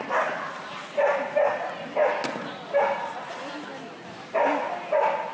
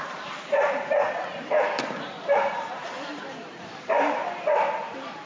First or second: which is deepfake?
second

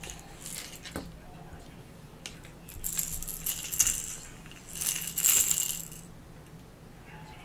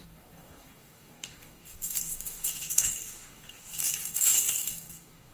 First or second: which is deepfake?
second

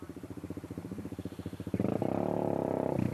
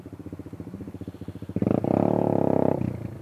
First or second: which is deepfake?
first